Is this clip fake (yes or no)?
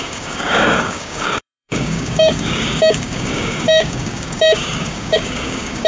yes